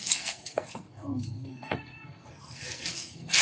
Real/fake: fake